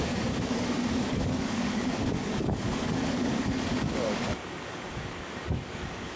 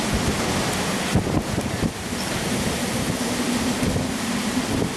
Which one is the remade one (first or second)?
first